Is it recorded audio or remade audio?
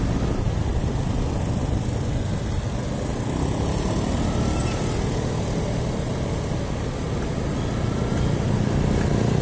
recorded